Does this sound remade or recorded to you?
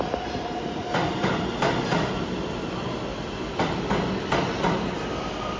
recorded